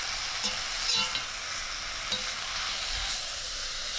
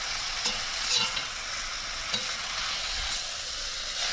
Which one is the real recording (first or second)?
first